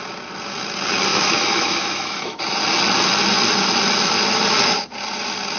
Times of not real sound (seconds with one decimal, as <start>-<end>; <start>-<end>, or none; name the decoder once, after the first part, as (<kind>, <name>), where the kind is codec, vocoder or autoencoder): 1.1-2.4 (autoencoder, DAC-VAE)